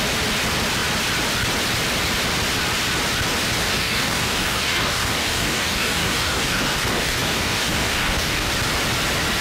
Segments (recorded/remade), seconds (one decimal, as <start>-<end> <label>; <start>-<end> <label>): 0.0-3.6 recorded; 3.6-8.5 remade; 8.5-9.4 recorded